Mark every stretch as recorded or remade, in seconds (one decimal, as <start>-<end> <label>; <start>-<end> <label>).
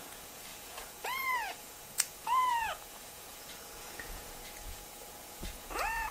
0.0-6.1 remade